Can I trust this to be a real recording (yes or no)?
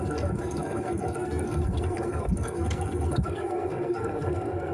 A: no